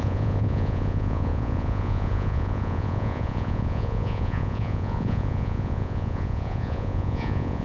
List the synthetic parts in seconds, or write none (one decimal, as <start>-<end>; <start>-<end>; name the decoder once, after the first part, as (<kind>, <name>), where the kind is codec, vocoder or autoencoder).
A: 0.0-7.6 (vocoder, Vocos)